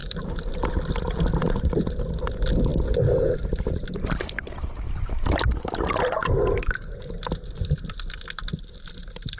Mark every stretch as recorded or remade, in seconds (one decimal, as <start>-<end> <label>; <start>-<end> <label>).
0.0-9.4 recorded

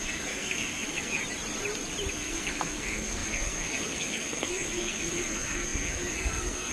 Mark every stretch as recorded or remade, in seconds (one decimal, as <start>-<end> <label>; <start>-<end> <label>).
0.0-1.2 remade; 1.2-2.1 recorded; 2.1-6.7 remade

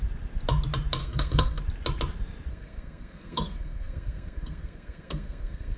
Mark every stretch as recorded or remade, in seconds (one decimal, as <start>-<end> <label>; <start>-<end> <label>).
0.0-1.0 recorded; 1.0-1.6 remade; 1.6-2.5 recorded; 2.5-5.8 remade

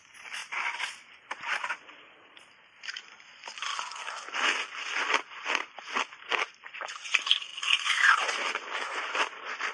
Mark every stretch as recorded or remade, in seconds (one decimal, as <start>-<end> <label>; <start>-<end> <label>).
0.0-3.7 remade; 3.7-6.3 recorded; 6.3-7.5 remade; 7.5-8.2 recorded; 8.2-9.7 remade

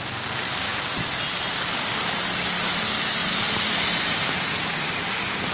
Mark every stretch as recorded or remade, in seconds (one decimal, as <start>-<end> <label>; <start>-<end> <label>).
0.0-5.5 recorded

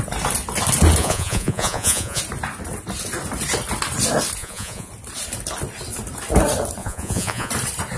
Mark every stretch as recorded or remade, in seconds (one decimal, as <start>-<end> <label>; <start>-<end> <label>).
0.0-1.0 recorded; 1.0-2.2 remade; 2.2-4.4 recorded; 4.4-4.9 remade; 4.9-6.8 recorded; 6.8-7.5 remade; 7.5-8.0 recorded